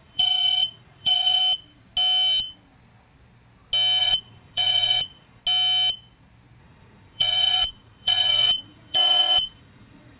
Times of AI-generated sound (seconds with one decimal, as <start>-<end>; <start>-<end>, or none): 0.0-1.4; 4.0-5.4; 6.6-10.2